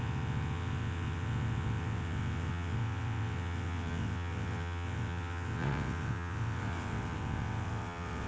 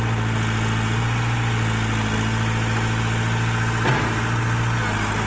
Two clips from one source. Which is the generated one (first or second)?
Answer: first